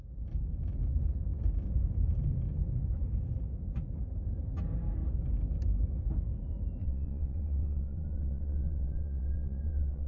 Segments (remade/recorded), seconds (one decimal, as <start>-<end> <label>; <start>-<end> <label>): 0.0-6.8 recorded; 6.8-10.1 remade